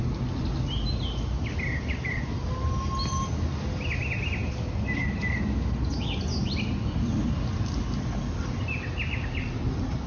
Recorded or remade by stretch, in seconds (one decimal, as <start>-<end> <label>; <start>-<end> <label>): 0.0-10.1 recorded